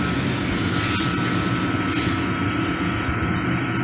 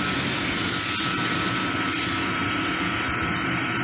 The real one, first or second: first